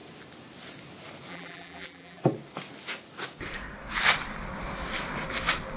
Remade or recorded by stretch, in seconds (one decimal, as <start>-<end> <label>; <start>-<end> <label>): 0.0-1.3 recorded; 1.3-2.2 remade; 2.2-5.8 recorded

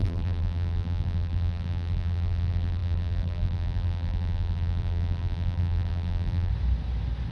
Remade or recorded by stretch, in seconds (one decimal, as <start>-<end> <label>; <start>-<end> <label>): 0.0-6.5 remade; 6.5-7.3 recorded

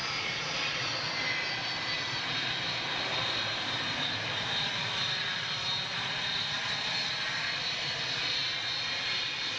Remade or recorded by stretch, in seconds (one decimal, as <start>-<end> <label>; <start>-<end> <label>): 0.0-9.6 recorded

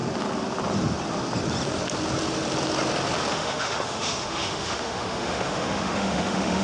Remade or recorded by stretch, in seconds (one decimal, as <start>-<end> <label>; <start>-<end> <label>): 0.0-3.3 recorded; 3.3-6.6 remade

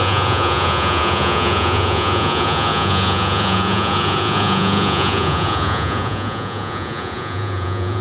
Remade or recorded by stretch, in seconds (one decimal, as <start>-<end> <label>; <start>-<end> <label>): 0.0-8.0 remade

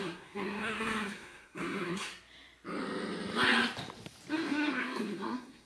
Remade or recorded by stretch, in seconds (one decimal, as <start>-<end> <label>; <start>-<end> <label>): 0.0-2.1 remade; 2.1-4.3 recorded; 4.3-5.7 remade